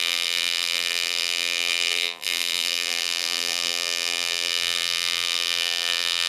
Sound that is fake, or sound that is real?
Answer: fake